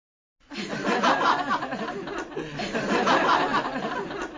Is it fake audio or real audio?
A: real